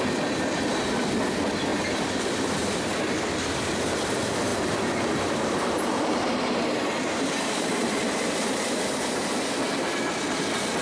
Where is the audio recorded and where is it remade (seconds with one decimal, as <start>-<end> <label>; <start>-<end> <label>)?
0.0-1.7 recorded; 1.7-2.6 remade; 2.6-4.5 recorded; 4.5-8.8 remade; 8.8-10.8 recorded